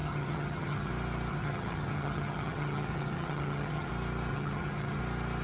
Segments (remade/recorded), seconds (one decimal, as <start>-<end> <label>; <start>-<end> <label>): 0.0-0.9 remade; 0.9-1.3 recorded; 1.3-3.9 remade; 3.9-4.3 recorded; 4.3-5.0 remade; 5.0-5.4 recorded